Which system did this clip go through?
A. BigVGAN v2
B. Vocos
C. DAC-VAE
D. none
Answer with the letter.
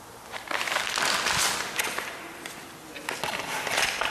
D